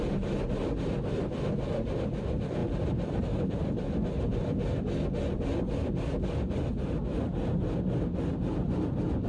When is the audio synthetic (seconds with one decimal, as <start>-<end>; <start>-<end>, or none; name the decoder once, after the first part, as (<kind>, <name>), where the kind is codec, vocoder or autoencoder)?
none